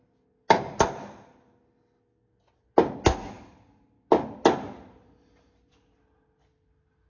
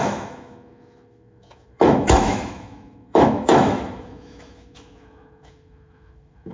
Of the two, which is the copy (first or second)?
second